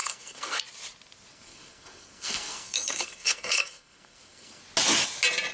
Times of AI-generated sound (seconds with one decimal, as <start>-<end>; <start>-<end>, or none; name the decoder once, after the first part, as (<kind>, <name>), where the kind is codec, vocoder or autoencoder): 0.0-0.6 (codec, SNAC); 1.3-4.6